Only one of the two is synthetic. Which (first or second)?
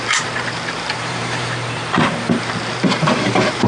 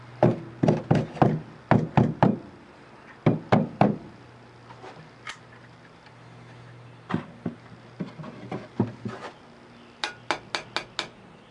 first